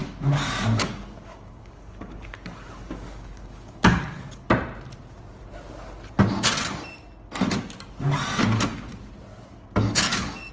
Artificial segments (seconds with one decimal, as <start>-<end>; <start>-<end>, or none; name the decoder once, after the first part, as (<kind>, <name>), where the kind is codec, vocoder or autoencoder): 0.0-4.5 (codec, DAC); 9.3-10.5